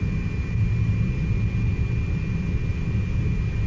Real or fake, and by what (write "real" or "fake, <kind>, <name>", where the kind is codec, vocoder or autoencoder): real